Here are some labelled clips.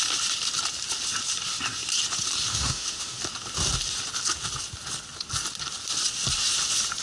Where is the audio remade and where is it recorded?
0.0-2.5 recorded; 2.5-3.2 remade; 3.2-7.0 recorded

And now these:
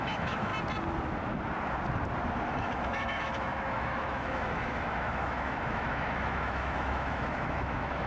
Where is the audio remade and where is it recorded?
0.0-0.5 remade; 0.5-2.5 recorded; 2.5-8.1 remade

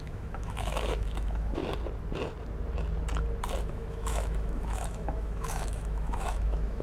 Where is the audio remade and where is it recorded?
0.0-1.6 remade; 1.6-3.6 recorded; 3.6-6.8 remade

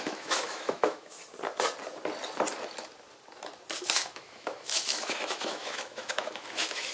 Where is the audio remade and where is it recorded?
0.0-1.2 remade; 1.2-3.8 recorded; 3.8-6.9 remade

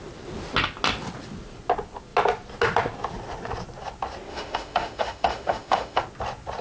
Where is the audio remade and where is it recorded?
0.0-4.3 recorded; 4.3-6.0 remade; 6.0-6.6 recorded

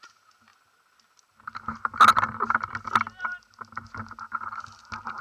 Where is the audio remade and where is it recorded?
0.0-5.2 recorded